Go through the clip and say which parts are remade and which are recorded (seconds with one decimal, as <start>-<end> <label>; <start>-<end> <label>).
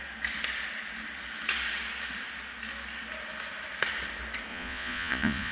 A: 0.0-4.5 recorded; 4.5-5.5 remade